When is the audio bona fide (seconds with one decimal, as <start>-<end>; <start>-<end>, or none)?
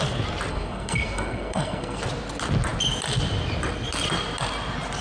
0.0-0.5; 2.0-5.0